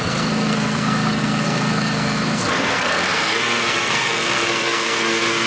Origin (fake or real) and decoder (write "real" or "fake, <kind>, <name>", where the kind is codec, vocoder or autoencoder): fake, codec, SNAC